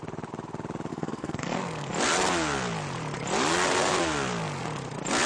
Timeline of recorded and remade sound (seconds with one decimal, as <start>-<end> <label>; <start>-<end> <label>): 0.0-0.9 recorded; 0.9-1.9 remade; 1.9-5.3 recorded